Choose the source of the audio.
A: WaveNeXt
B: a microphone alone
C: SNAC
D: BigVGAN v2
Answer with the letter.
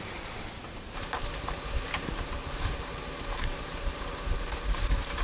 D